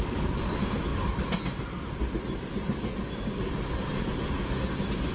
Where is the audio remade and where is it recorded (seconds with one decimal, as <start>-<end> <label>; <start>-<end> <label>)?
0.0-5.1 recorded